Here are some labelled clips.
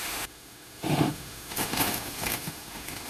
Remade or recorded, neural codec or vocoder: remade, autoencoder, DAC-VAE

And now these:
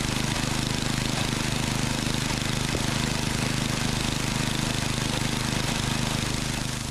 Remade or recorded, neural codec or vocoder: recorded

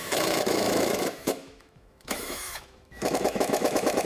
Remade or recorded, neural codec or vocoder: remade, autoencoder, DAC-VAE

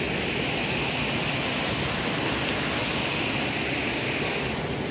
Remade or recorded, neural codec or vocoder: recorded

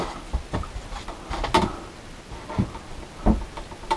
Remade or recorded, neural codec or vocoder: recorded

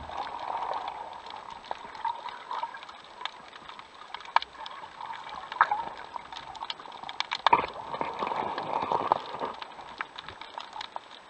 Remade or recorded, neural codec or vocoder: recorded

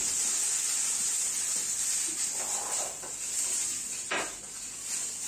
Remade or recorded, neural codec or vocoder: recorded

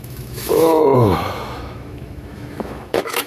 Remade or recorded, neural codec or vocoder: remade, autoencoder, DAC-VAE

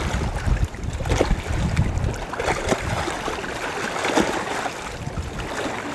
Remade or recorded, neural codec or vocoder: recorded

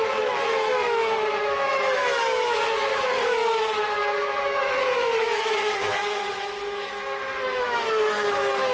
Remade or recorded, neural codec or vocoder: remade, autoencoder, DAC-VAE